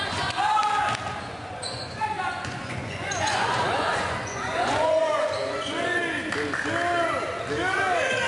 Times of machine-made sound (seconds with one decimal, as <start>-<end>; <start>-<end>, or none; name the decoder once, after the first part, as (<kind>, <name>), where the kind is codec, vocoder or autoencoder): 0.0-0.6 (vocoder, Vocos); 1.2-6.0